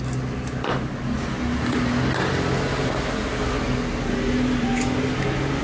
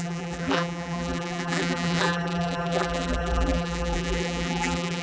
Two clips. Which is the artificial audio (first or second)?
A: second